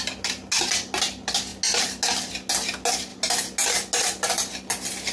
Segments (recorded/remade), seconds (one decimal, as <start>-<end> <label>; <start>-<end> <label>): 0.0-5.1 recorded